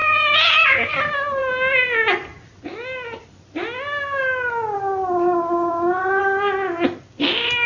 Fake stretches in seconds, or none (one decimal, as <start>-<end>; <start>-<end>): 0.0-0.9